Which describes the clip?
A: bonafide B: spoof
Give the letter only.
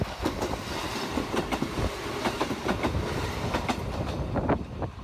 A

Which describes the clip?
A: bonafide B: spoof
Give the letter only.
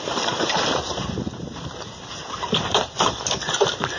B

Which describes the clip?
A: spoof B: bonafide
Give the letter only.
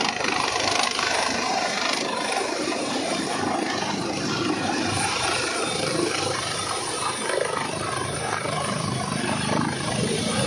A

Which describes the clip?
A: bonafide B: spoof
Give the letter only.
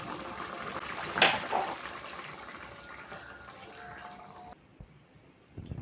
A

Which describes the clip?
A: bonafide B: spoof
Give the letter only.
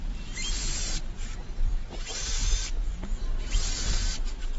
A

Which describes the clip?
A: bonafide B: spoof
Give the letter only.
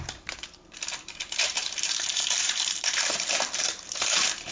B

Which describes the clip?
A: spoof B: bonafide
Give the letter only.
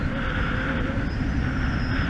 B